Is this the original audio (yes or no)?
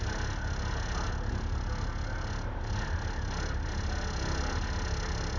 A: yes